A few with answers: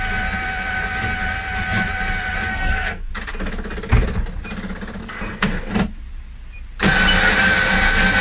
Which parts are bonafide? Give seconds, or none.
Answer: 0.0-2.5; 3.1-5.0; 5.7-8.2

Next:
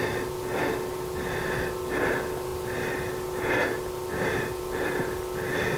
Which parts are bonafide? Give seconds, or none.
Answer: 0.0-5.8

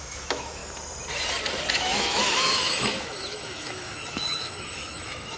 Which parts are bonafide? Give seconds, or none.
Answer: 0.6-1.7

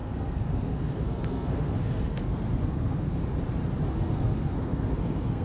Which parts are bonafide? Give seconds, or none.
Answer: 3.2-3.9

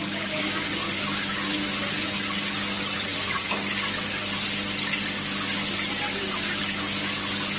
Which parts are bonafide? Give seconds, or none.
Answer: 0.0-7.6

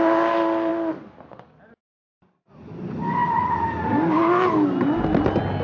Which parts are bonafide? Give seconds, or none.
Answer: 0.0-0.7; 2.5-5.6